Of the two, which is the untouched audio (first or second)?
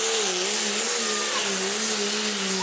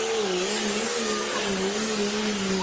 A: first